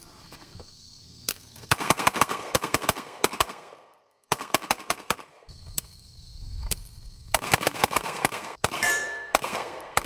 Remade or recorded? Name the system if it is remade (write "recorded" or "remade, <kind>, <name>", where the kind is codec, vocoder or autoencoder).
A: remade, codec, SNAC